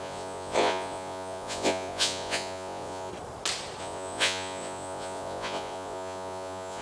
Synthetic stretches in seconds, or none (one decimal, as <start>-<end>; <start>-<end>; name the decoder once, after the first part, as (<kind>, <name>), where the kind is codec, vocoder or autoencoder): 0.0-3.1 (vocoder, Vocos); 3.8-6.8